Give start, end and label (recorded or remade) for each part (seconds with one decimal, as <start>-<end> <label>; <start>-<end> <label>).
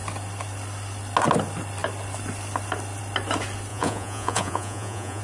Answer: 0.0-3.7 recorded; 3.7-5.2 remade